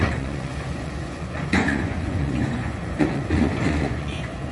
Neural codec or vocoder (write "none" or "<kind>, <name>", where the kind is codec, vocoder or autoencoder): vocoder, Vocos